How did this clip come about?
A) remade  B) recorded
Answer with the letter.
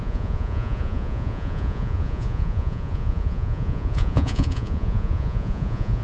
A